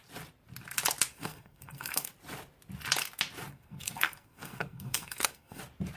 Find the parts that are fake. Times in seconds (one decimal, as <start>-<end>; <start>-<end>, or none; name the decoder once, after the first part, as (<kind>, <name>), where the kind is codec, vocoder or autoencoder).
1.1-2.1 (codec, SNAC); 3.5-5.6